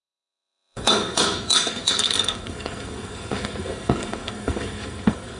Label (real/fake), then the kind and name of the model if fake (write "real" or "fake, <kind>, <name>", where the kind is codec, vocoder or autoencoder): fake, codec, SNAC